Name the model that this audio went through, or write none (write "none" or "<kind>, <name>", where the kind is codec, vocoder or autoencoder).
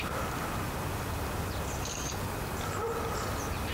none